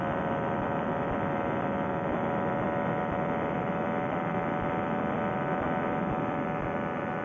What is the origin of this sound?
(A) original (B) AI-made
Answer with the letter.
A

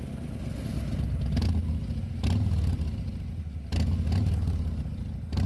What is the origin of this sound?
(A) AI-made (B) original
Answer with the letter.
B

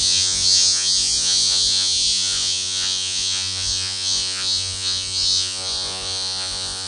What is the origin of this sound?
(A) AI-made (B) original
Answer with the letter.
A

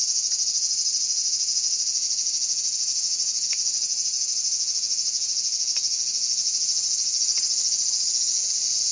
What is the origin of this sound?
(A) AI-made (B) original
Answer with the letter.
A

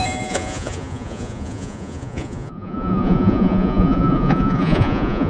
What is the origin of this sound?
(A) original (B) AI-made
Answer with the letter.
B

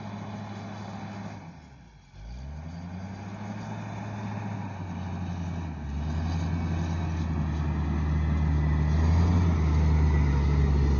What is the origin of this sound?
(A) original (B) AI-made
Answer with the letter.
A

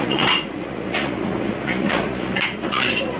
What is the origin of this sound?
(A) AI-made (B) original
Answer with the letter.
A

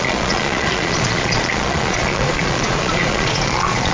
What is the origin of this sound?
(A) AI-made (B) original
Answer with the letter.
A